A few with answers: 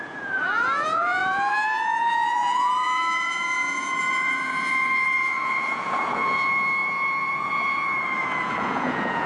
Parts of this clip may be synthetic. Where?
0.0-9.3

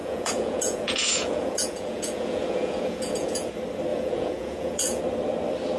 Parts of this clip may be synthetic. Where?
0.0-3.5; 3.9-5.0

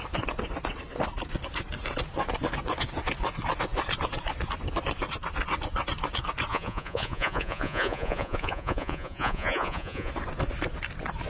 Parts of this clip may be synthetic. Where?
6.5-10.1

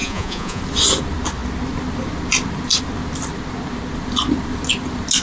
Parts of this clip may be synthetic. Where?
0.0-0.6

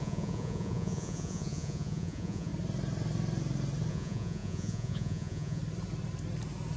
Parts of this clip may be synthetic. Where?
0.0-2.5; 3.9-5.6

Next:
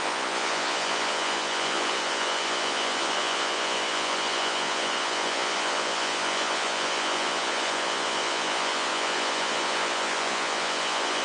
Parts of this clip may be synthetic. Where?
0.0-11.2